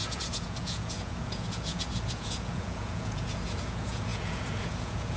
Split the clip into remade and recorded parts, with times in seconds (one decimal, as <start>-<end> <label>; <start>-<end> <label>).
0.0-5.2 remade